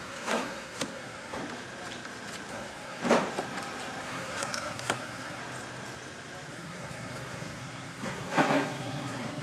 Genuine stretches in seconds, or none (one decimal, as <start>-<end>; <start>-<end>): 1.4-2.5; 3.0-4.0; 5.4-6.5

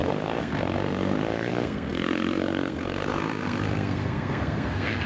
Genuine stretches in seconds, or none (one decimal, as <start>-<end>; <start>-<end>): none

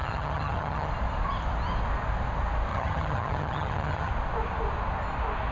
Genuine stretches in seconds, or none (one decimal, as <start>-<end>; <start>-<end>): 0.9-2.7; 4.1-5.5

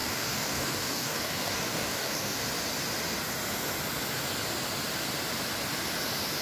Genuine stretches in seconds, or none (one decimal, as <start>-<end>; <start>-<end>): 2.4-6.4

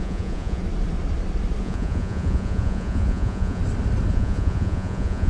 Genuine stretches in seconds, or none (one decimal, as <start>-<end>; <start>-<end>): 0.6-1.6; 3.6-4.1

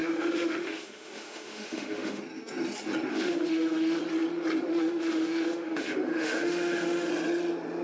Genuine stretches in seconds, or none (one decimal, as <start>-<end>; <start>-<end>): 2.2-3.1; 4.0-4.7; 7.1-7.8